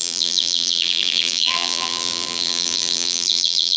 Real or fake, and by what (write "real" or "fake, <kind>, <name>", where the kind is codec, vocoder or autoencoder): fake, vocoder, BigVGAN v2